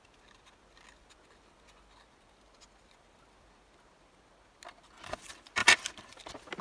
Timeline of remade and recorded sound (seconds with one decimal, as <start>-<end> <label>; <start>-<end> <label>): 0.0-6.6 recorded